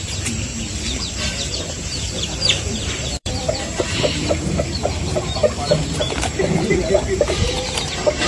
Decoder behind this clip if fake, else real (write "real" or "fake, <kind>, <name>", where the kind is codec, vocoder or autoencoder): fake, vocoder, BigVGAN v2